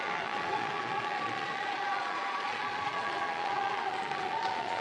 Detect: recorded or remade remade